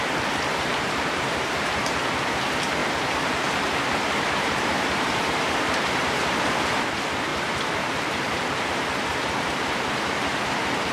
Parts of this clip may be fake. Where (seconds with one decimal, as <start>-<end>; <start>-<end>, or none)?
0.5-2.0; 2.8-6.5; 7.3-8.4; 9.1-10.3